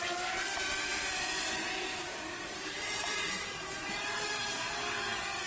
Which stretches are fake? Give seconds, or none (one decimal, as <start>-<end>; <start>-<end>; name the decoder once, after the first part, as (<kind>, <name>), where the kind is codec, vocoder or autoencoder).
1.6-4.4 (vocoder, BigVGAN v2)